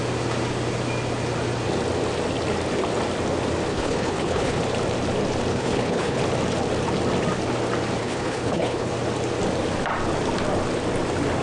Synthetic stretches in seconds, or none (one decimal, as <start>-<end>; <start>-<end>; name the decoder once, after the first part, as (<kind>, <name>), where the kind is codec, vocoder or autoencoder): 3.7-4.6 (codec, HILCodec); 5.5-6.2; 8.0-8.9